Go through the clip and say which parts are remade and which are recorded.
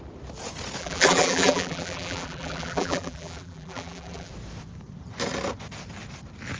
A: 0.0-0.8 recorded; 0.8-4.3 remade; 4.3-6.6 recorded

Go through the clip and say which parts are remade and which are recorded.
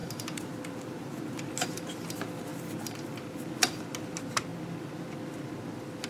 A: 0.0-0.6 remade; 0.6-2.5 recorded; 2.5-3.6 remade; 3.6-6.1 recorded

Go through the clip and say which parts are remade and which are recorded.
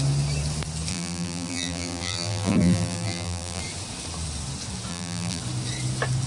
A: 0.0-0.9 recorded; 0.9-3.6 remade; 3.6-4.9 recorded; 4.9-5.4 remade; 5.4-6.3 recorded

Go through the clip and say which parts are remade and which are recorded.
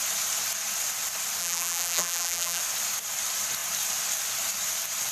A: 0.0-1.4 recorded; 1.4-2.6 remade; 2.6-5.1 recorded